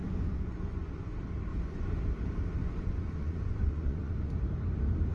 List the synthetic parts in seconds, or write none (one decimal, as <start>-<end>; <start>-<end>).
0.0-1.1; 1.5-2.0; 2.6-4.3